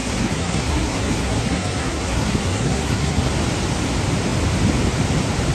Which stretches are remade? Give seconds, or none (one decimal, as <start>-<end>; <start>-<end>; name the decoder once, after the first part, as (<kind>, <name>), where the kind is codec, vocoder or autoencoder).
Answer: 0.0-3.3 (codec, SNAC)